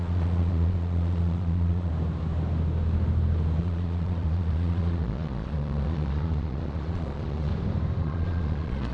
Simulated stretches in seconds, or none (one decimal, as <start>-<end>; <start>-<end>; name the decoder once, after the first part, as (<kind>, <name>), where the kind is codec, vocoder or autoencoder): 0.0-1.9 (vocoder, Vocos); 3.6-7.5; 8.0-8.9